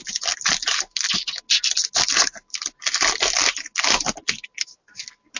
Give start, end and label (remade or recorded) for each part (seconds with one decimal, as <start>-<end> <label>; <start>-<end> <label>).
0.0-5.4 recorded